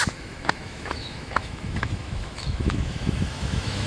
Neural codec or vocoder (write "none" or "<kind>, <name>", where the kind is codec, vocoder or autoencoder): autoencoder, DAC-VAE